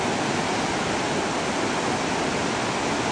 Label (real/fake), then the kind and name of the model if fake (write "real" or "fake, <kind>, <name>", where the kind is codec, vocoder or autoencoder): real